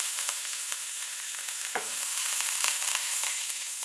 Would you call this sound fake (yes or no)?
yes